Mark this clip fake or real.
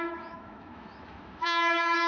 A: fake